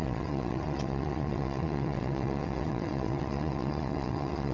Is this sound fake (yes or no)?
yes